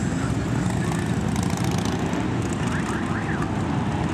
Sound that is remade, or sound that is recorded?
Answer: recorded